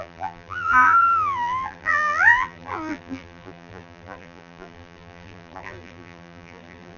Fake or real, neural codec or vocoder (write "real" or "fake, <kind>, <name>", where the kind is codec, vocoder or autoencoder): fake, vocoder, BigVGAN v2